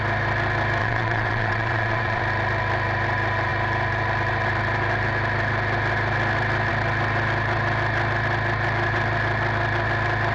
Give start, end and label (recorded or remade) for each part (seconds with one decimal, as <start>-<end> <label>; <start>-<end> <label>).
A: 0.0-0.8 recorded; 0.8-2.2 remade; 2.2-10.3 recorded